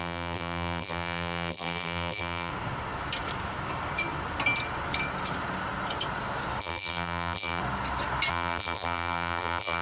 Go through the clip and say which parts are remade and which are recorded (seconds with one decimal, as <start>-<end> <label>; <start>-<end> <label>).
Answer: 0.0-2.5 remade; 2.5-6.6 recorded; 6.6-7.6 remade; 7.6-8.3 recorded; 8.3-9.8 remade